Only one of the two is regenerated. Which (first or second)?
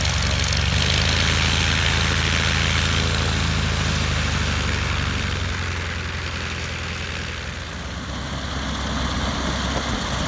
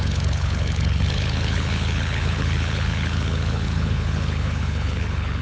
second